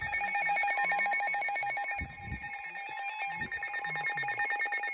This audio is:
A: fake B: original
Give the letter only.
B